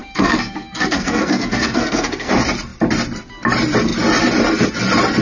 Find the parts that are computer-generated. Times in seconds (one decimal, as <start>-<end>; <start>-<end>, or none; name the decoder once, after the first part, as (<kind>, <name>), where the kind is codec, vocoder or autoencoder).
0.0-2.3 (codec, SNAC)